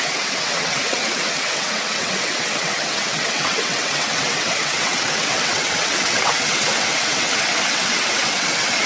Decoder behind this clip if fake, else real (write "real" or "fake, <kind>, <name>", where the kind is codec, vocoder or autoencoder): fake, vocoder, WaveNeXt